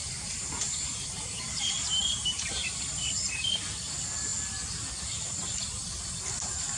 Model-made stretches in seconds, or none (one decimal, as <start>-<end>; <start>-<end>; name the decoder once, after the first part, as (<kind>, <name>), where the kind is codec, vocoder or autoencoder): 0.0-2.8 (vocoder, BigVGAN v2)